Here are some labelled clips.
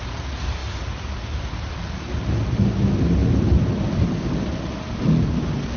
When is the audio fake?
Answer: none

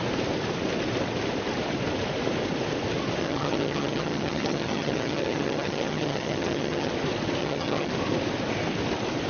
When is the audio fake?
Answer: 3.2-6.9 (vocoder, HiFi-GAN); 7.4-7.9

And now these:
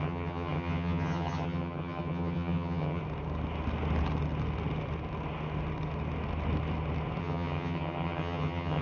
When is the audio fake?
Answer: 0.0-3.0 (vocoder, HiFi-GAN); 7.2-8.8